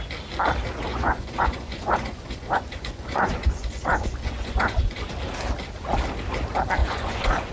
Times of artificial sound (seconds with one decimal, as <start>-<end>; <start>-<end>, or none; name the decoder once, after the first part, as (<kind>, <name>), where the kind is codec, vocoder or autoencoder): 0.9-5.1 (vocoder, Vocos); 6.8-7.5